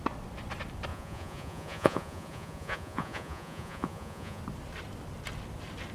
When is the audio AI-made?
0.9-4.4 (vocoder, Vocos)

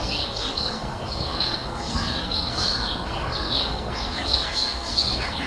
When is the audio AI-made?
0.0-5.5 (codec, SNAC)

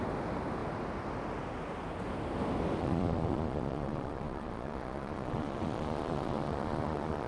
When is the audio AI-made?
2.8-7.3 (vocoder, Vocos)

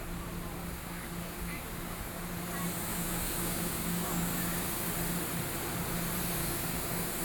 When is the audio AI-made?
0.6-2.2 (codec, DAC); 2.9-4.9; 6.4-7.2

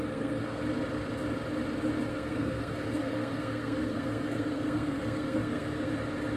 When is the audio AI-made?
0.0-0.6 (codec, SNAC); 2.1-5.9

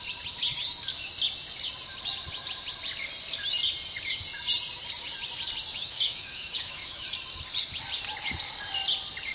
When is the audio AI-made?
5.7-7.1 (autoencoder, DAC-VAE)

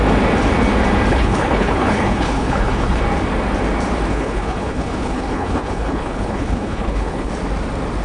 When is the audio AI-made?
1.1-3.0 (codec, HILCodec); 4.1-7.3

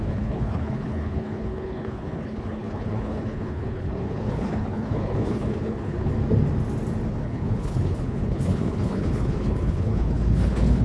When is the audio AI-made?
0.0-6.1 (codec, HILCodec); 7.1-10.8